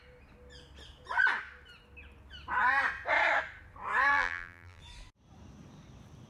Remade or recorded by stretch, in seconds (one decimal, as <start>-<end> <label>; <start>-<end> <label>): 0.0-4.1 recorded; 4.1-4.8 remade; 4.8-6.3 recorded